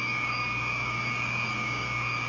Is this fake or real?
fake